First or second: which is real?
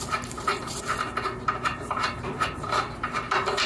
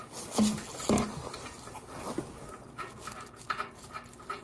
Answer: second